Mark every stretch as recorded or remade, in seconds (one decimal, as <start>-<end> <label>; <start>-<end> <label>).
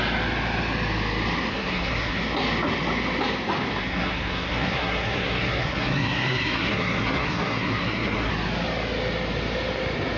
0.0-1.5 recorded; 1.5-2.2 remade; 2.2-3.8 recorded; 3.8-8.3 remade; 8.3-10.2 recorded